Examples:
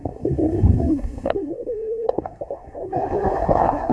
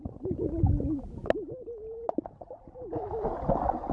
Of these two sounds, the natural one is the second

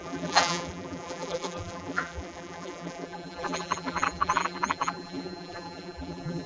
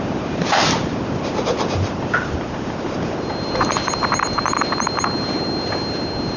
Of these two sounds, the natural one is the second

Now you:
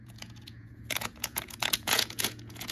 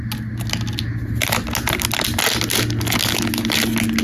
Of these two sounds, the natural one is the second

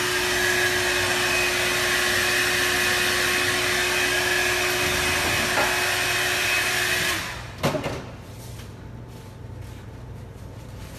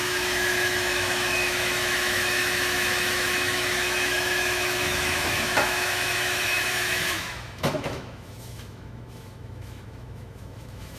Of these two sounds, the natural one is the first